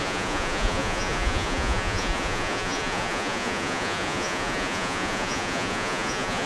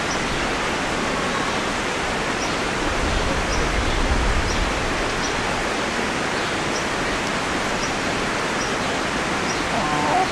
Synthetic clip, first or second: first